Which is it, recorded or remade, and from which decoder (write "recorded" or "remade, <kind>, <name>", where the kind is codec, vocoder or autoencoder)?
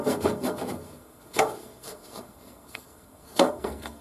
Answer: remade, codec, SNAC